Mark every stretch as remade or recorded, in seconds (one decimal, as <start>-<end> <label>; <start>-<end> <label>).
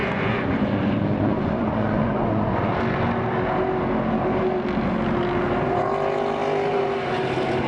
0.0-2.8 remade; 2.8-7.7 recorded